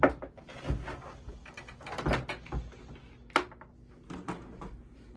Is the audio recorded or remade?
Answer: recorded